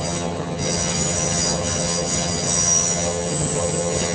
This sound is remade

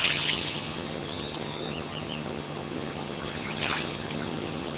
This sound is remade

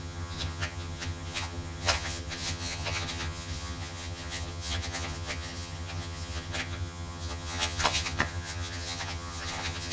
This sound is remade